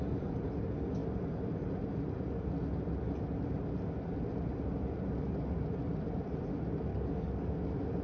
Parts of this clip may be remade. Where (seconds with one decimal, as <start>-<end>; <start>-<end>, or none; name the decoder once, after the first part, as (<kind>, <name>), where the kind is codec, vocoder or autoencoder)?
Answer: 6.9-7.5 (codec, DAC)